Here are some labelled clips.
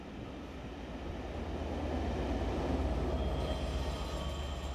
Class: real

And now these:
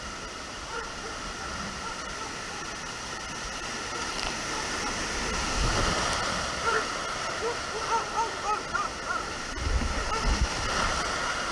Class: real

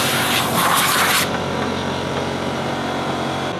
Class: real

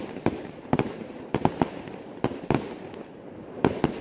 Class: fake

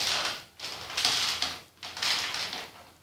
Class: real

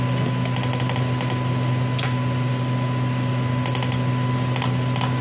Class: real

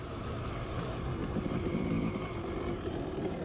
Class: fake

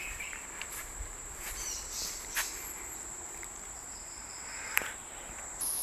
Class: fake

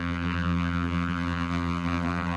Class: fake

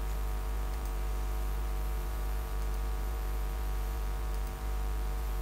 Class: fake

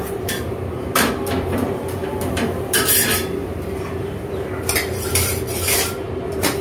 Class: fake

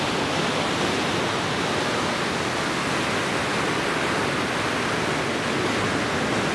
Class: real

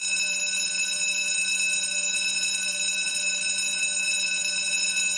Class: real